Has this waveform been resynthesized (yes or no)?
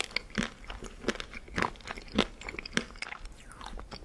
no